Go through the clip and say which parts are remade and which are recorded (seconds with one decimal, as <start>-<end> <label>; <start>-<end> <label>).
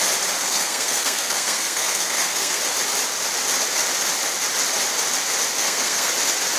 0.0-0.4 recorded; 0.4-2.6 remade; 2.6-5.6 recorded; 5.6-6.1 remade; 6.1-6.6 recorded